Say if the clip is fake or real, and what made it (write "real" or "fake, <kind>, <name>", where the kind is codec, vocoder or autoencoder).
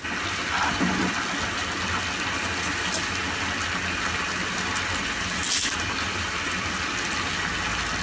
real